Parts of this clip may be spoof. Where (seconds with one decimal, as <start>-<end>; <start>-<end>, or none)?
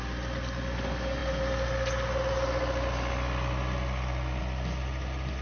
none